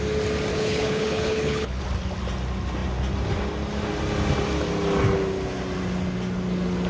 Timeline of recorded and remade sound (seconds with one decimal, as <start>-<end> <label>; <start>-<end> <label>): 0.0-0.5 recorded; 0.5-1.8 remade; 1.8-6.9 recorded